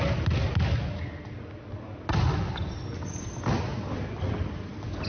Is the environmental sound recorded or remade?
recorded